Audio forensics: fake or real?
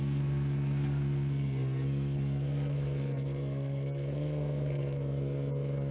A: fake